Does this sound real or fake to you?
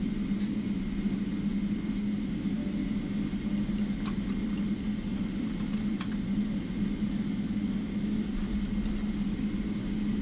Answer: real